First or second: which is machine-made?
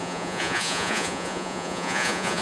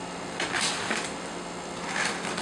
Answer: first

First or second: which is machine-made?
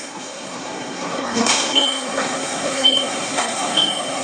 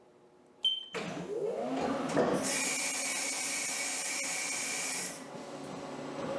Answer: first